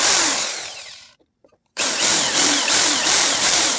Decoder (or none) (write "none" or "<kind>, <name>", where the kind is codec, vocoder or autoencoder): vocoder, BigVGAN v2